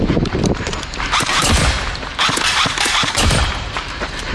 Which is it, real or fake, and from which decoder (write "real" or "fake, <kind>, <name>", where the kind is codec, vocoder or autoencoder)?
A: fake, vocoder, BigVGAN v2